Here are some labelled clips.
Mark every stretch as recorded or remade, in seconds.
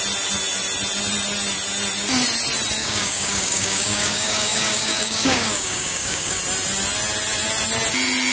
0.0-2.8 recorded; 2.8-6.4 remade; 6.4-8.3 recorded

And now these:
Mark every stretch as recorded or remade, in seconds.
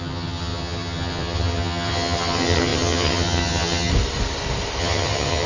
0.0-3.9 remade; 3.9-4.8 recorded; 4.8-5.5 remade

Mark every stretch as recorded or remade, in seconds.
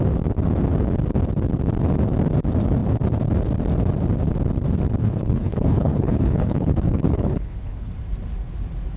0.0-5.0 recorded; 5.0-7.9 remade; 7.9-9.0 recorded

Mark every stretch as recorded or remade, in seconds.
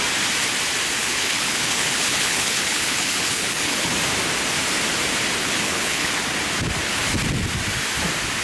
0.0-1.0 recorded; 1.0-3.9 remade; 3.9-5.4 recorded; 5.4-6.1 remade; 6.1-8.4 recorded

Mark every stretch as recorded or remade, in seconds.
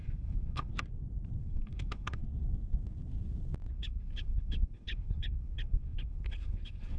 0.0-0.7 remade; 0.7-1.4 recorded; 1.4-2.2 remade; 2.2-3.7 recorded; 3.7-7.0 remade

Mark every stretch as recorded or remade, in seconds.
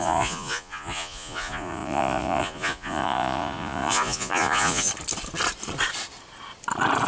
0.0-4.9 remade; 4.9-7.1 recorded